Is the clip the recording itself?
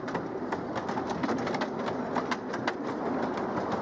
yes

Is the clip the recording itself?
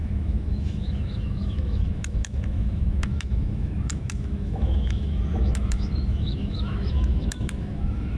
no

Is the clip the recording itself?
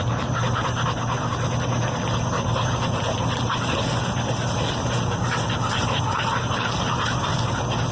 yes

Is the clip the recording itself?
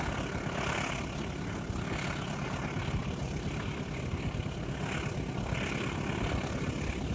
yes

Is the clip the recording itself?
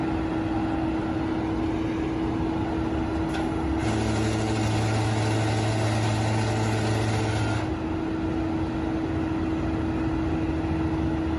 yes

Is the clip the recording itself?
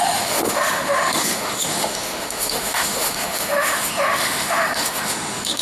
no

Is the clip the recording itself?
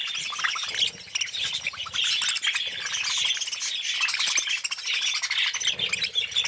yes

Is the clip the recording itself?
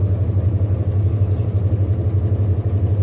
yes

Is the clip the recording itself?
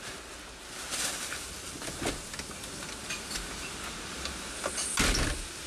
yes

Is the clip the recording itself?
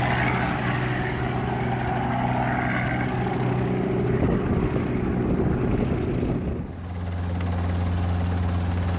yes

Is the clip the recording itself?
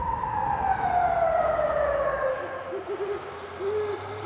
yes